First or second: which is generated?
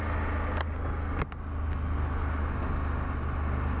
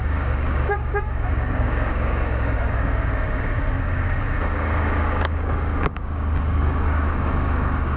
second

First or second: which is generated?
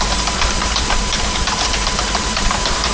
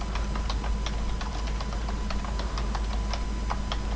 first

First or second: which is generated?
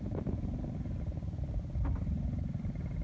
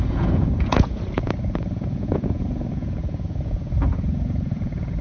second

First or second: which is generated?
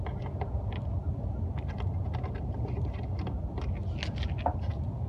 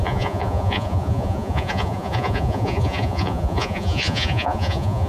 second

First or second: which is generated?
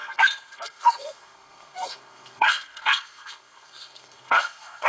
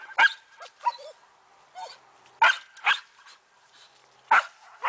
first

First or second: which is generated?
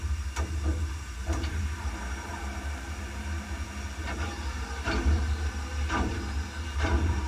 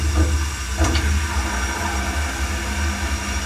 first